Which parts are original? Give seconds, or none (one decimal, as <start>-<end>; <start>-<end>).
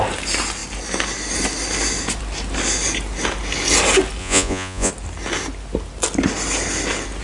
0.0-4.2; 4.9-7.2